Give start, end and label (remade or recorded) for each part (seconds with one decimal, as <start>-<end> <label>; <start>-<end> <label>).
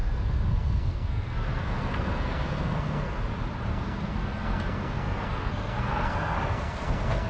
0.0-3.2 remade; 3.2-3.7 recorded; 3.7-7.3 remade